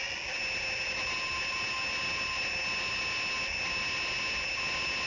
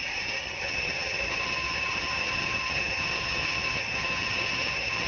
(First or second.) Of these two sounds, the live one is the first